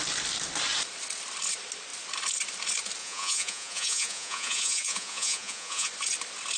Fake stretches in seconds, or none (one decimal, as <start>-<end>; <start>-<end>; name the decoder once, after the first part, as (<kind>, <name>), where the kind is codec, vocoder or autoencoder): 3.0-5.9 (vocoder, Vocos)